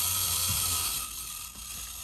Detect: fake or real real